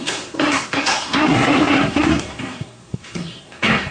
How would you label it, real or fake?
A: fake